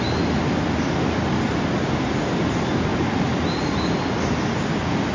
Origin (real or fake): real